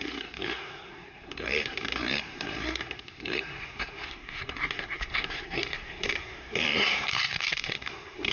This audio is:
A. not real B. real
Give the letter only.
A